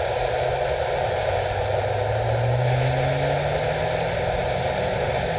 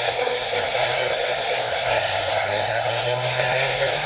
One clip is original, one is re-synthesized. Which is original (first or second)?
first